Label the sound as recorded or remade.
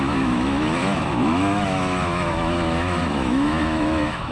remade